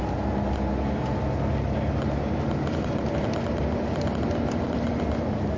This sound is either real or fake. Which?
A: real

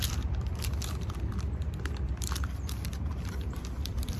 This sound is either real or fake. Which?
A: fake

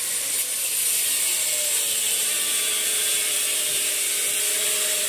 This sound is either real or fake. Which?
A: fake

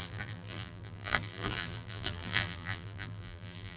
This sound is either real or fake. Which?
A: fake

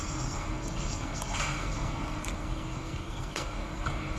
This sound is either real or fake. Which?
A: fake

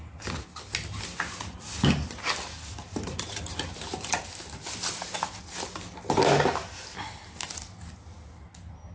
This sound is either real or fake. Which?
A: real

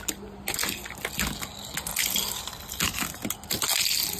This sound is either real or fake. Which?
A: real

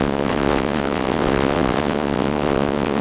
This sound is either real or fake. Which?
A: fake